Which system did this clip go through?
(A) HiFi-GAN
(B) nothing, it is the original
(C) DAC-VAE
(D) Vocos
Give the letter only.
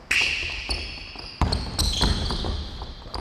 B